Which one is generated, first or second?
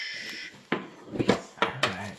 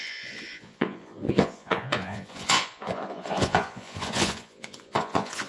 second